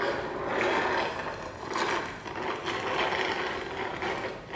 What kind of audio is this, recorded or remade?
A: recorded